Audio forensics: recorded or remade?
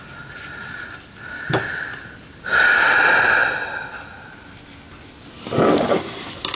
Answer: recorded